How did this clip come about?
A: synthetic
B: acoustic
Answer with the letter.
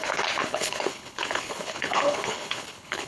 A